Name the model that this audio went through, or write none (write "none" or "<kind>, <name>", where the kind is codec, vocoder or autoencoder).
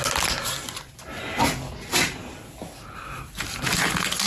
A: none